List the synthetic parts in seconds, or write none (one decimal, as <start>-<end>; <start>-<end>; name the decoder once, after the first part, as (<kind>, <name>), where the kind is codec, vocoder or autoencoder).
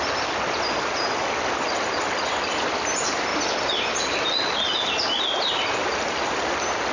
none